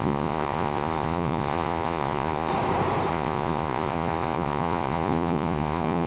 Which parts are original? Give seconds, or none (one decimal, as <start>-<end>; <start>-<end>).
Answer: 2.5-3.1